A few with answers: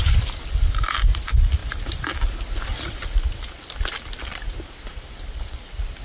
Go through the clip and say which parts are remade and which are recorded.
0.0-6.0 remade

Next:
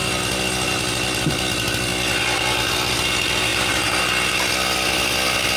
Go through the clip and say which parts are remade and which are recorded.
0.0-3.5 recorded; 3.5-4.0 remade; 4.0-5.6 recorded

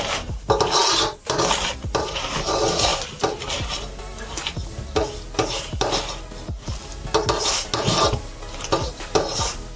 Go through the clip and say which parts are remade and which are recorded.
0.0-9.8 recorded

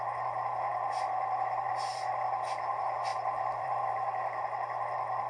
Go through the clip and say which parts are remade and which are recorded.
0.0-0.7 recorded; 0.7-1.7 remade; 1.7-3.1 recorded; 3.1-5.3 remade

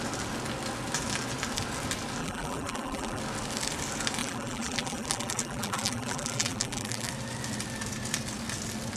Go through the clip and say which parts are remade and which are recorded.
0.0-2.2 recorded; 2.2-3.2 remade; 3.2-4.2 recorded; 4.2-7.1 remade; 7.1-9.0 recorded

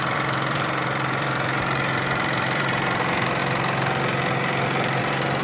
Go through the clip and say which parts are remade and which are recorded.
0.0-3.4 remade; 3.4-5.0 recorded; 5.0-5.4 remade

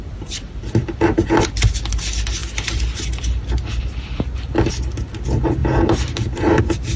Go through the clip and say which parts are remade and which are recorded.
0.0-2.4 recorded; 2.4-3.8 remade; 3.8-7.0 recorded